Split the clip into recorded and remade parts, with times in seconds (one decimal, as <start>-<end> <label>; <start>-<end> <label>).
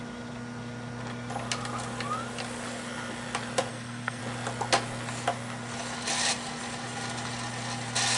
0.0-3.7 recorded; 3.7-4.2 remade; 4.2-8.2 recorded